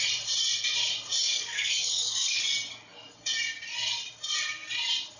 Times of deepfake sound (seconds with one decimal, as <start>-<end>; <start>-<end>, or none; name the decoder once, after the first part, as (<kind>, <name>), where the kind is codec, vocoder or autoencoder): 1.2-2.4 (codec, DAC)